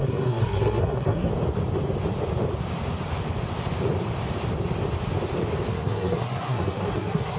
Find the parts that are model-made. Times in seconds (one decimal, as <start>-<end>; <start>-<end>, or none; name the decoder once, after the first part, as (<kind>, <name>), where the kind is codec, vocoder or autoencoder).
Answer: 0.0-1.3 (codec, SNAC); 5.7-7.4